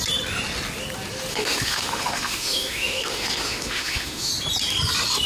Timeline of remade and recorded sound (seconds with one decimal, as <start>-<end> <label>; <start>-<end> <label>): 0.0-1.3 recorded; 1.3-4.3 remade; 4.3-5.3 recorded